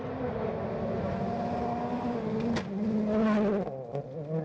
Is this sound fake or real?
real